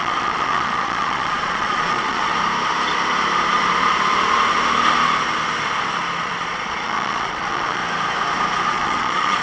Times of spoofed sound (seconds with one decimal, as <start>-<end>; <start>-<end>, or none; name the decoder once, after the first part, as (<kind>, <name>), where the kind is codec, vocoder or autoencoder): 0.0-2.3 (vocoder, Vocos); 6.2-7.8; 8.7-9.4